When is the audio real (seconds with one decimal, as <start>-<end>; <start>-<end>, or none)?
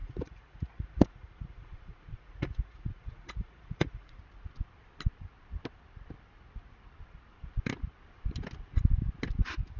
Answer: 4.2-9.8